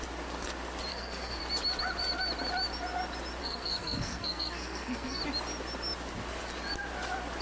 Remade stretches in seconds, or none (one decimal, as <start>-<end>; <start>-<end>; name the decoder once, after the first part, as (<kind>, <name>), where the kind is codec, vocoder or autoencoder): 0.9-1.4 (codec, SNAC); 3.4-5.2